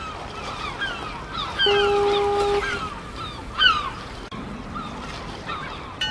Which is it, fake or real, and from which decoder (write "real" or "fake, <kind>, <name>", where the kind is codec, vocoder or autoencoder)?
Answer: real